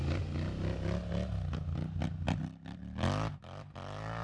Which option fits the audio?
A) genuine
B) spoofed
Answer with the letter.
A